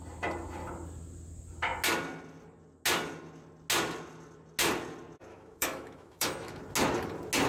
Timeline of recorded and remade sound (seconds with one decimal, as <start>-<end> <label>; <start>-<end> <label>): 0.0-5.3 recorded; 5.3-6.6 remade; 6.6-7.5 recorded